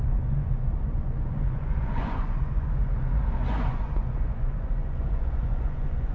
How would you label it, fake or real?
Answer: fake